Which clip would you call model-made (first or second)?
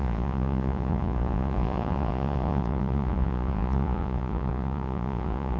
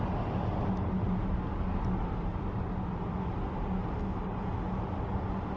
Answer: first